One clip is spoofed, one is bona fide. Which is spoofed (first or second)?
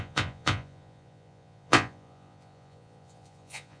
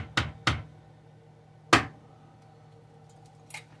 first